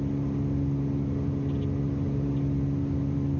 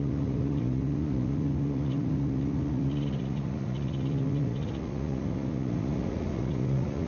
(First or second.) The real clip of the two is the first